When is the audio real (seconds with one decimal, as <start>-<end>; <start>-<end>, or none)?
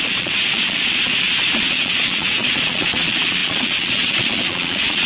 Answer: none